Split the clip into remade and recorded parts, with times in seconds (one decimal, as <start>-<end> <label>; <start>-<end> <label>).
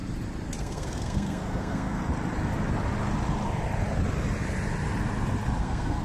0.0-0.6 recorded; 0.6-2.0 remade; 2.0-5.6 recorded; 5.6-6.0 remade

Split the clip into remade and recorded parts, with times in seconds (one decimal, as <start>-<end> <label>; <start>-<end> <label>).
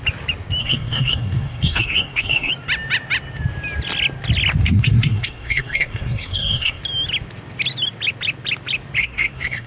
0.0-0.6 recorded; 0.6-2.5 remade; 2.5-4.6 recorded; 4.6-6.8 remade; 6.8-9.0 recorded; 9.0-9.7 remade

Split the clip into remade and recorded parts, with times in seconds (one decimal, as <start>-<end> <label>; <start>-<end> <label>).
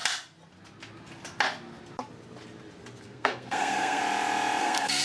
0.0-3.0 recorded; 3.0-4.0 remade; 4.0-4.6 recorded; 4.6-5.0 remade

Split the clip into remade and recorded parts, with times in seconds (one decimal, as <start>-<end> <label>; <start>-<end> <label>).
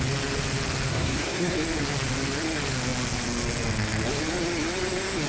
0.0-0.9 recorded; 0.9-1.5 remade; 1.5-5.3 recorded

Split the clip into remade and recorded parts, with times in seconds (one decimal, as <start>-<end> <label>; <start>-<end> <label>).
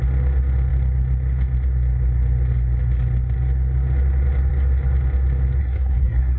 0.0-5.6 recorded; 5.6-6.4 remade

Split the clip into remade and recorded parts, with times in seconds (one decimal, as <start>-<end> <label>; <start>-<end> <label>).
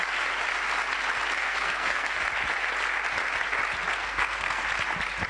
0.0-1.4 recorded; 1.4-2.2 remade; 2.2-3.9 recorded; 3.9-4.6 remade; 4.6-5.3 recorded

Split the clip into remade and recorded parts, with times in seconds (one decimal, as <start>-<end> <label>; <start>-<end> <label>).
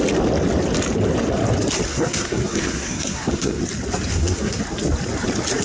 0.0-1.9 recorded; 1.9-3.6 remade; 3.6-4.1 recorded; 4.1-4.6 remade; 4.6-5.6 recorded